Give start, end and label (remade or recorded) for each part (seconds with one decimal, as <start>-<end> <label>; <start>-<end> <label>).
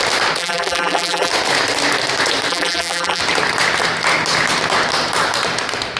0.0-0.4 recorded; 0.4-1.3 remade; 1.3-2.5 recorded; 2.5-3.2 remade; 3.2-6.0 recorded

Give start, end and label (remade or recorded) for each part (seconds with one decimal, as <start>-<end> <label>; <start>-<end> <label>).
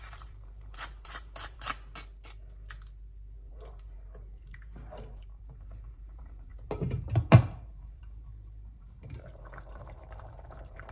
0.0-1.7 remade; 1.7-3.5 recorded; 3.5-10.9 remade